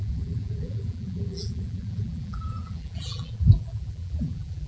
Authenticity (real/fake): fake